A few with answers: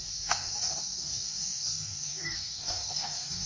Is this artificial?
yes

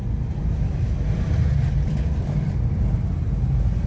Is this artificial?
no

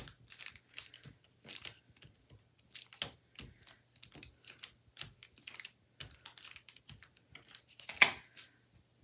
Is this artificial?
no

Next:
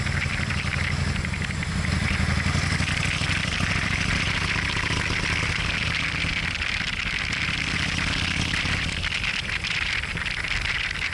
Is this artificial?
yes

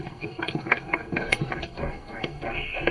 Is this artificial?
yes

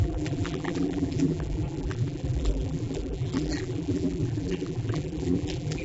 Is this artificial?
yes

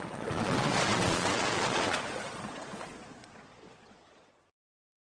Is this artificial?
yes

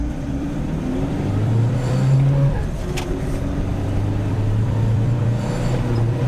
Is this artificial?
yes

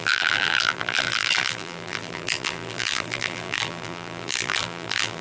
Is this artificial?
yes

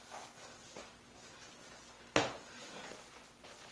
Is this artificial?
no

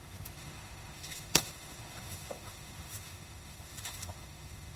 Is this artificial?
yes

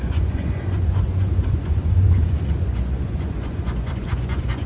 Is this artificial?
yes